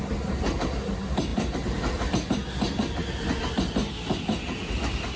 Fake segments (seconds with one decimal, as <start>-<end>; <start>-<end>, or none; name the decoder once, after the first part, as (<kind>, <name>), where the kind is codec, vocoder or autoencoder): none